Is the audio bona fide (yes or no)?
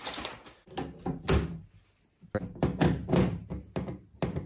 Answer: yes